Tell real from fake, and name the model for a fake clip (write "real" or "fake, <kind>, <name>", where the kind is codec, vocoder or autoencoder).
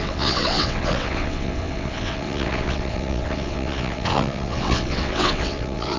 fake, vocoder, WaveNeXt